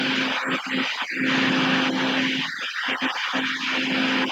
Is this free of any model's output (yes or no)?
yes